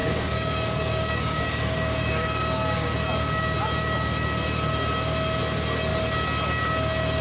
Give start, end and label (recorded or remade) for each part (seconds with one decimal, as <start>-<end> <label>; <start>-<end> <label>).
0.0-2.9 remade; 2.9-7.2 recorded